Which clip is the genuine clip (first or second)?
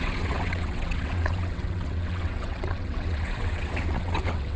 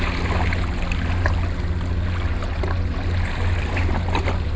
second